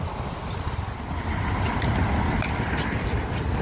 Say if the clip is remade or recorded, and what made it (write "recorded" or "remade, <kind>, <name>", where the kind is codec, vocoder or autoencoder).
recorded